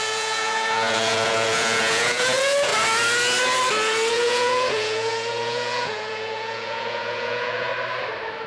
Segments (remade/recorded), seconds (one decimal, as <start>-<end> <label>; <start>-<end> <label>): 0.0-2.7 remade; 2.7-4.1 recorded; 4.1-7.7 remade; 7.7-8.5 recorded